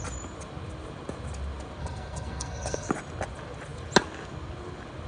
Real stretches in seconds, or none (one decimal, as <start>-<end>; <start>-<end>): 0.0-1.8; 2.9-5.1